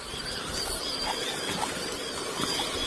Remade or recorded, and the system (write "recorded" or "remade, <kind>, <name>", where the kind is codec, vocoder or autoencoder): recorded